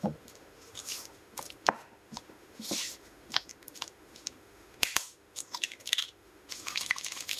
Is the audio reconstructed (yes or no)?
yes